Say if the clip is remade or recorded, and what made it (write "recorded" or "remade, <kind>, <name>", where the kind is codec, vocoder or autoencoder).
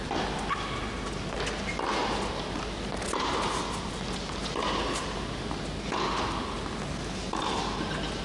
recorded